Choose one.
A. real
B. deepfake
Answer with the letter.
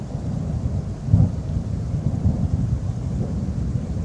B